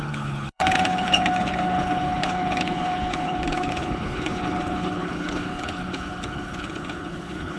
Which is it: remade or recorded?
remade